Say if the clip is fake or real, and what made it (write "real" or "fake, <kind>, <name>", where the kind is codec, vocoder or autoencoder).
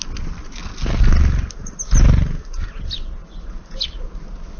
real